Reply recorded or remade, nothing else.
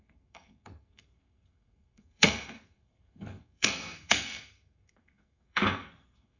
remade